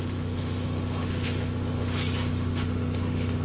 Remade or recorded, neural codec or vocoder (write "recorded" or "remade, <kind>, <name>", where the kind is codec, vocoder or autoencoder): remade, autoencoder, DAC-VAE